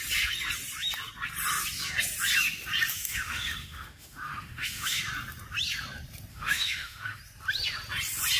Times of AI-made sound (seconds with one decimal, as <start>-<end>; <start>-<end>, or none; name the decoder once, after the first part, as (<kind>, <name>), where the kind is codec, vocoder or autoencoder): 2.9-5.0 (autoencoder, DAC-VAE); 6.3-7.2